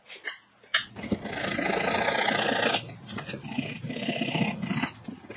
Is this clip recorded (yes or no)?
yes